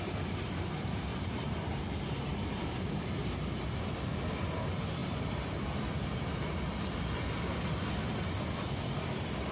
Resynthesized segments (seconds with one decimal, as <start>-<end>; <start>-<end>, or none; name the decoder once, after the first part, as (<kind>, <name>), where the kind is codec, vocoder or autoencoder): 1.1-1.8 (vocoder, BigVGAN v2); 5.0-5.8